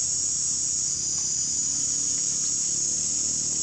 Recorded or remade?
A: recorded